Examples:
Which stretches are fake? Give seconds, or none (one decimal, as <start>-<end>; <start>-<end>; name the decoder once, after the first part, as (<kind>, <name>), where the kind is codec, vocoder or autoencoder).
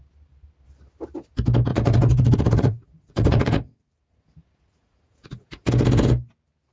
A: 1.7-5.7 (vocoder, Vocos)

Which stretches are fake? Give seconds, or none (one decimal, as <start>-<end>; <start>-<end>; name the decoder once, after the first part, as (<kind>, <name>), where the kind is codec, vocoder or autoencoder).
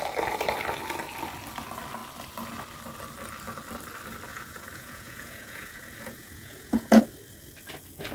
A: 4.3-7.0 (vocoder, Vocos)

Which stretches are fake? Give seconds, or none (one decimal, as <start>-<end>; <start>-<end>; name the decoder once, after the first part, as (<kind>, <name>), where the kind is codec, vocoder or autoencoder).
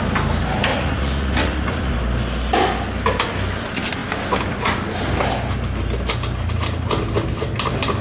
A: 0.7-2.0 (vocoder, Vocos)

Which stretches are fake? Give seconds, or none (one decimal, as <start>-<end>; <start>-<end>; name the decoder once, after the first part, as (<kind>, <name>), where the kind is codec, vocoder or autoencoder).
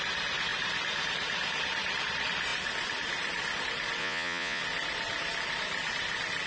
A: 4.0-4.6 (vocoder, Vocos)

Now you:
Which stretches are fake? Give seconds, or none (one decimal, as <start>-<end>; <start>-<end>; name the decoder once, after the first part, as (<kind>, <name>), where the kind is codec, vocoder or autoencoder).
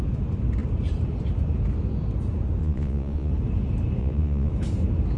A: 2.6-3.3 (vocoder, Vocos); 4.0-4.5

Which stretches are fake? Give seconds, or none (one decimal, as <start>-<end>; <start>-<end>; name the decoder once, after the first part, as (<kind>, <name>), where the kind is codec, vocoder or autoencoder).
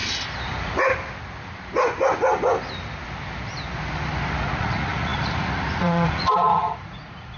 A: 4.4-7.4 (vocoder, Vocos)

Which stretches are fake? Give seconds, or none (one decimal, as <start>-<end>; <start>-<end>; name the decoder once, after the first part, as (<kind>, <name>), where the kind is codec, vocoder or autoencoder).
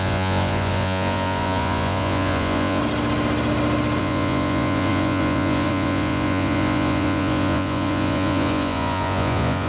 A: 0.0-2.8 (vocoder, Vocos); 4.0-9.7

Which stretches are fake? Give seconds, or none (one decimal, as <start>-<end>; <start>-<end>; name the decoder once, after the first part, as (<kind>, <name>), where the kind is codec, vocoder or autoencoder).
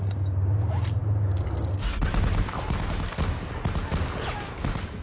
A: none